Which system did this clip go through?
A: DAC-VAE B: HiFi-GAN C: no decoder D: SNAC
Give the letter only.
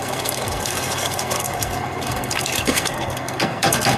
D